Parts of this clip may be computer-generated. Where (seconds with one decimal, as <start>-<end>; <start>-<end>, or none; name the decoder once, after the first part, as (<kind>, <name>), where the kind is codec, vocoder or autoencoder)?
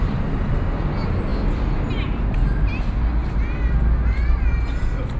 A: none